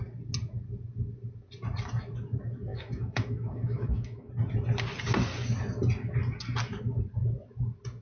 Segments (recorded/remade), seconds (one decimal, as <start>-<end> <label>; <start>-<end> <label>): 0.0-2.7 recorded; 2.7-4.3 remade; 4.3-8.0 recorded